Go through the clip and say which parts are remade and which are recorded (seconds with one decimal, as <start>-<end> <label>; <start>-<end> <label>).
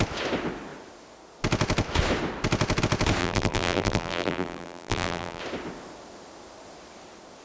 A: 0.0-3.2 recorded; 3.2-5.4 remade; 5.4-7.4 recorded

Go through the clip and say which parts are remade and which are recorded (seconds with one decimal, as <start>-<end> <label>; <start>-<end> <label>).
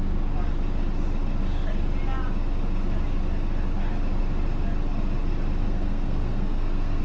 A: 0.0-5.6 recorded; 5.6-7.0 remade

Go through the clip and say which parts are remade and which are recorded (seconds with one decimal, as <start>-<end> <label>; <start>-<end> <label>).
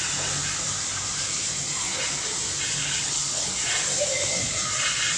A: 0.0-2.8 recorded; 2.8-3.5 remade; 3.5-5.2 recorded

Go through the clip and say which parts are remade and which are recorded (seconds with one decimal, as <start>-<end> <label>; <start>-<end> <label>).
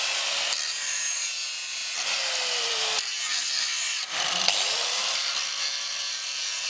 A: 0.0-1.8 remade; 1.8-2.6 recorded; 2.6-6.7 remade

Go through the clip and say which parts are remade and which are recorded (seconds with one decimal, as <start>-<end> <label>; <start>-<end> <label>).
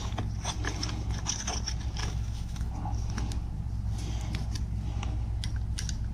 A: 0.0-2.0 recorded; 2.0-2.7 remade; 2.7-6.1 recorded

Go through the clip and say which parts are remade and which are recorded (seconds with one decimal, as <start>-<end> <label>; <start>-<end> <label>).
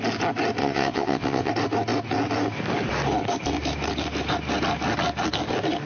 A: 0.0-0.6 recorded; 0.6-1.5 remade; 1.5-5.9 recorded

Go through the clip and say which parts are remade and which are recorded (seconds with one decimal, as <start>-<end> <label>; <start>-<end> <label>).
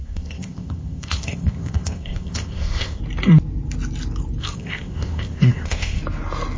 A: 0.0-3.0 remade; 3.0-4.4 recorded; 4.4-6.0 remade; 6.0-6.6 recorded